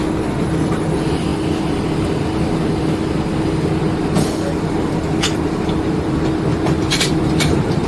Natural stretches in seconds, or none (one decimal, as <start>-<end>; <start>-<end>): 1.3-4.6

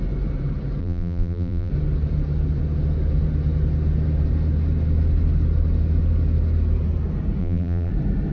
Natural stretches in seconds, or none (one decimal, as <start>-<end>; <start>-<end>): 0.0-0.8; 1.7-7.4; 7.9-8.3

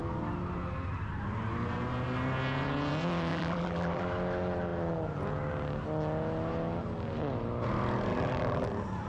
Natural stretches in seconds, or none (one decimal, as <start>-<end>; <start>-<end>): 0.0-3.3; 4.0-8.1; 8.7-9.1